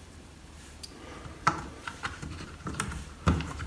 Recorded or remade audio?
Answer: remade